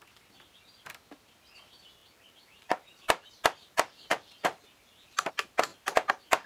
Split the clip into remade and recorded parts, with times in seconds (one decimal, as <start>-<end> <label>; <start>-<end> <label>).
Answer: 0.0-2.0 recorded; 2.0-5.3 remade; 5.3-5.7 recorded; 5.7-6.5 remade